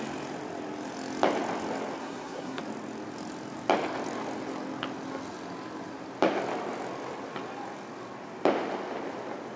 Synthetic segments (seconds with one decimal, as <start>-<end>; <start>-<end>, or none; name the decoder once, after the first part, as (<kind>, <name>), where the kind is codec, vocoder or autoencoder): 2.0-2.6 (codec, SNAC)